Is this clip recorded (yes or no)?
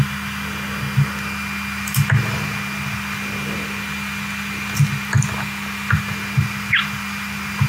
yes